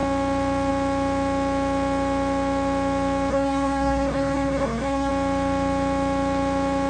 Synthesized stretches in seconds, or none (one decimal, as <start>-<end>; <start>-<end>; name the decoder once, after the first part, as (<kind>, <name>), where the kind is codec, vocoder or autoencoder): 3.3-5.1 (codec, SNAC)